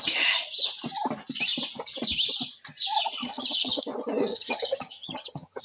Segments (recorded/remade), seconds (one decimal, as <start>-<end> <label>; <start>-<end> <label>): 0.0-3.2 recorded; 3.2-3.8 remade; 3.8-4.3 recorded; 4.3-5.6 remade